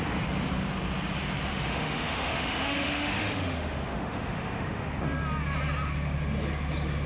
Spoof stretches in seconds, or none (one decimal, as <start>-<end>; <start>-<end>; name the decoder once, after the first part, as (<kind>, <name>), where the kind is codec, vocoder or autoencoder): 1.5-4.9 (autoencoder, DAC-VAE)